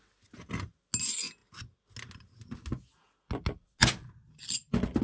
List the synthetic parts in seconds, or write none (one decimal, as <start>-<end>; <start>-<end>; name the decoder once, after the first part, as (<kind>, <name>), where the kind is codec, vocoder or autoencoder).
none